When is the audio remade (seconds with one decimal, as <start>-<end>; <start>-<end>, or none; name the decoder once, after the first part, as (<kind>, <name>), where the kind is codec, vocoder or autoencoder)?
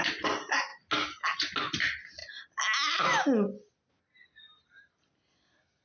0.0-0.7 (vocoder, BigVGAN v2); 1.8-2.2